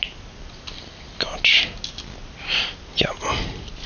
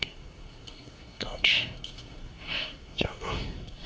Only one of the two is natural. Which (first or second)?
first